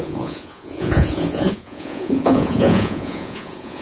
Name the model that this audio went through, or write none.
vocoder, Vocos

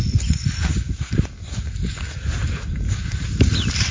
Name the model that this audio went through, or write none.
none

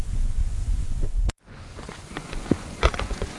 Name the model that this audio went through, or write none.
vocoder, Vocos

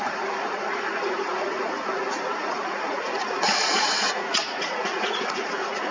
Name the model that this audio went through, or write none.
vocoder, Vocos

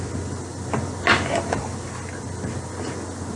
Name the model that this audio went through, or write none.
none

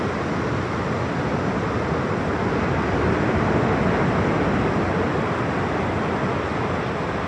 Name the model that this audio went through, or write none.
none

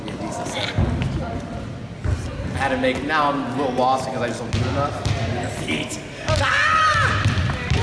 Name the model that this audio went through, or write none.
none